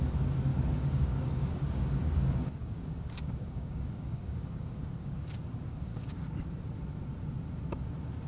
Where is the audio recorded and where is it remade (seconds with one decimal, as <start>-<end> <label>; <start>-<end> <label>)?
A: 0.0-0.5 recorded; 0.5-5.5 remade; 5.5-5.9 recorded; 5.9-6.5 remade; 6.5-8.3 recorded